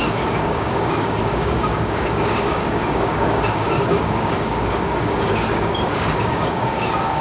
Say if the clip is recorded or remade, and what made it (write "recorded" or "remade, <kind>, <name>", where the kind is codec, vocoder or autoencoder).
remade, codec, DAC